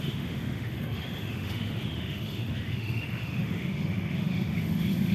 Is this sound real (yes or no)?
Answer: no